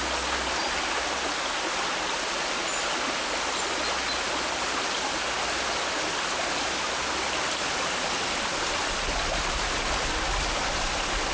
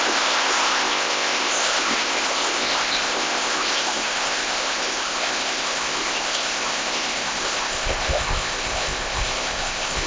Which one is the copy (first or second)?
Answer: second